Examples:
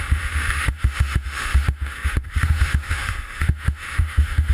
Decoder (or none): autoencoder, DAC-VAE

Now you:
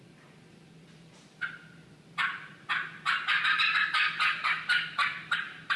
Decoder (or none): vocoder, BigVGAN v2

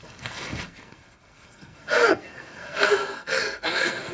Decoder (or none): codec, SNAC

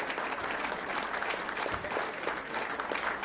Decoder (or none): none